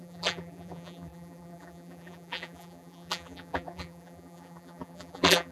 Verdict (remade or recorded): remade